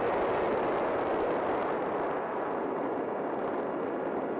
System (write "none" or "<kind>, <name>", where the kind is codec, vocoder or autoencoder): none